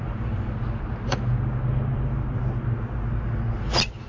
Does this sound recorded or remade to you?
recorded